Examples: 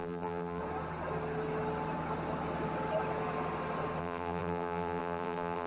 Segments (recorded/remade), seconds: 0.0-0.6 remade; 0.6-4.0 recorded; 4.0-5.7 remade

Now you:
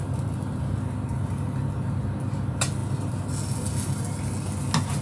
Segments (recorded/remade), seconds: 0.0-5.0 recorded

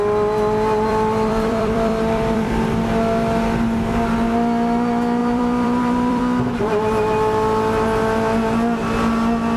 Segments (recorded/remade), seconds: 0.0-0.9 recorded; 0.9-2.6 remade; 2.6-5.2 recorded; 5.2-6.2 remade; 6.2-9.6 recorded